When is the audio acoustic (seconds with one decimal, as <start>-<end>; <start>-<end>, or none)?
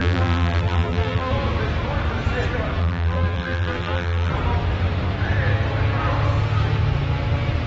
1.3-2.8; 4.3-7.7